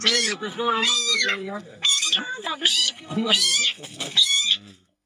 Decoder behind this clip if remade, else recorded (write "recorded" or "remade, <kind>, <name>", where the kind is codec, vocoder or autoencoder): remade, codec, SNAC